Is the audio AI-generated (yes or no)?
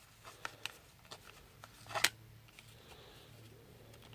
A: no